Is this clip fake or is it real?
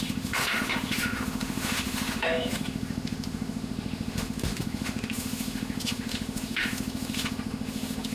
fake